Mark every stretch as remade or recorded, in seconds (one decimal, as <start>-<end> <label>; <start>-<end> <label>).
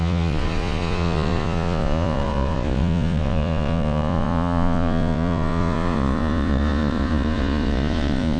0.0-8.4 remade